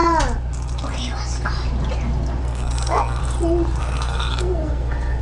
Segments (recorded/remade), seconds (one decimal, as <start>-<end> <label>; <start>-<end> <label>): 0.0-2.4 recorded; 2.4-3.2 remade; 3.2-3.8 recorded; 3.8-5.2 remade